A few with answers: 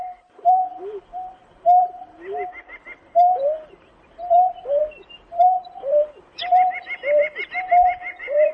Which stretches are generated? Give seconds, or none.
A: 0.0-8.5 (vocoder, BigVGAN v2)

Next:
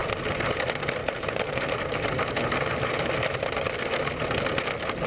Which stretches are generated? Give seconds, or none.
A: 1.0-3.1 (vocoder, BigVGAN v2)